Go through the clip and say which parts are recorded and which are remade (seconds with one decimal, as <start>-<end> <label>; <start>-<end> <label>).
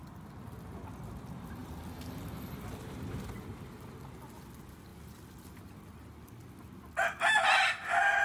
0.0-8.2 recorded